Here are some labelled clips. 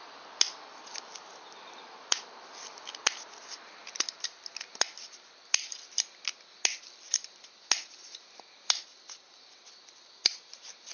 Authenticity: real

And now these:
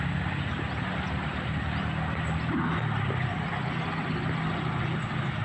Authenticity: real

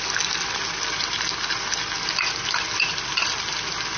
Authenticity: real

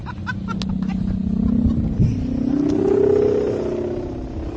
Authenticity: real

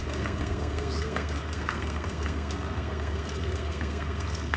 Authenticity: fake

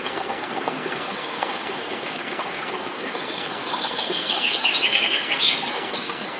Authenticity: fake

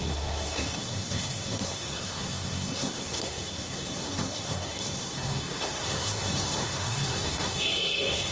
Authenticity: fake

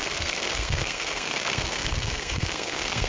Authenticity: fake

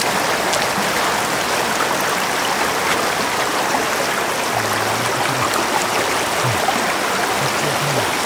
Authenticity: real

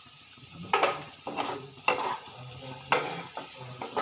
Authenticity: real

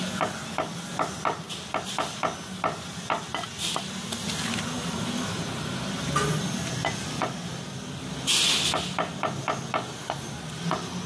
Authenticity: real